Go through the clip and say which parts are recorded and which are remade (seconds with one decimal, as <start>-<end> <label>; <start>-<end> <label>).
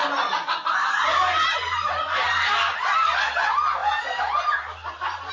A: 0.0-5.3 recorded